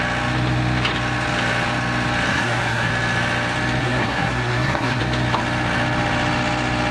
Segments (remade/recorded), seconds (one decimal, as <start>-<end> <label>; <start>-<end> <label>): 0.0-2.3 recorded; 2.3-2.9 remade; 2.9-3.8 recorded; 3.8-5.0 remade; 5.0-6.9 recorded